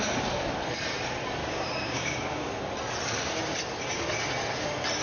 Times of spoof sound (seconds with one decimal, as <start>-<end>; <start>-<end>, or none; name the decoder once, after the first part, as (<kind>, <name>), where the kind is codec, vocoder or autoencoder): 1.4-2.5 (codec, DAC)